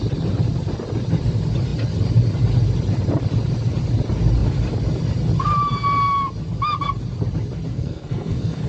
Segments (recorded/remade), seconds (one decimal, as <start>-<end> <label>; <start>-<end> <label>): 0.0-7.7 recorded; 7.7-8.7 remade